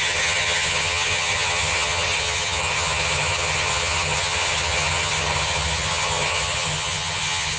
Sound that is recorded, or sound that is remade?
remade